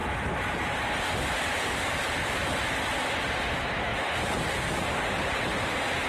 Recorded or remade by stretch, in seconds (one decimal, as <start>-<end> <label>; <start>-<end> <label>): 0.0-6.1 recorded